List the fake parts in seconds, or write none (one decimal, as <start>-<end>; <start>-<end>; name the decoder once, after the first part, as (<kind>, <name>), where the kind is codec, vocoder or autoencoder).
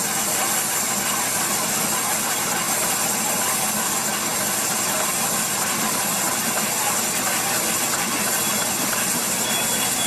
none